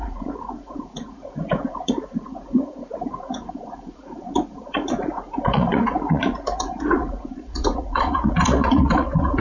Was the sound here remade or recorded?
remade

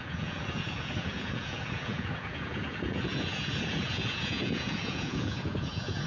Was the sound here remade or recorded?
remade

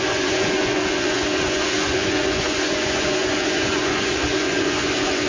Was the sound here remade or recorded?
remade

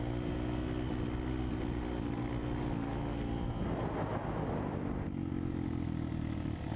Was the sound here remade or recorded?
recorded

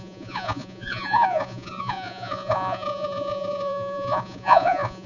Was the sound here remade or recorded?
remade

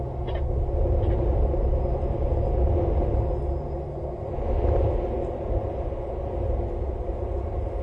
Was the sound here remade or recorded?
recorded